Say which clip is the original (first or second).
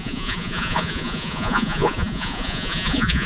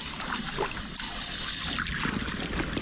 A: second